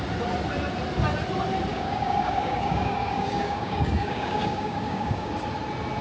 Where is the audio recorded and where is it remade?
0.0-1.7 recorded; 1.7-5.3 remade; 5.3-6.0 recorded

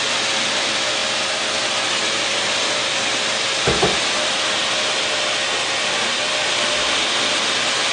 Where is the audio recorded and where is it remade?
0.0-7.9 recorded